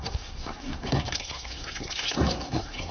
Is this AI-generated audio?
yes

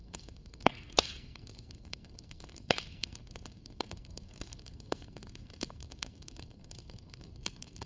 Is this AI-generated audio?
yes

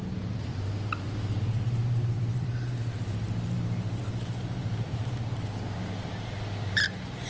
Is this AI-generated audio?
yes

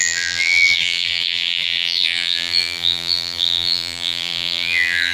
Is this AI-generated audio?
yes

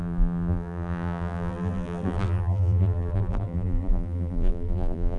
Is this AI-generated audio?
yes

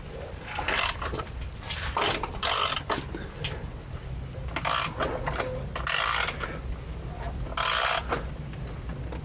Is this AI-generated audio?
no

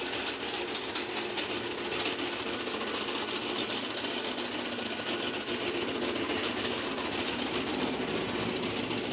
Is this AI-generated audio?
no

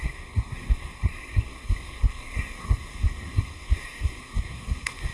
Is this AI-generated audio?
yes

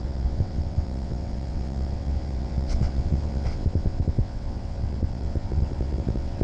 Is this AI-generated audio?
yes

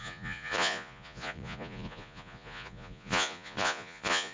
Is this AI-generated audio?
yes